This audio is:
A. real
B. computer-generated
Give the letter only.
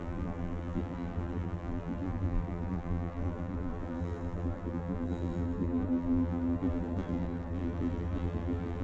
B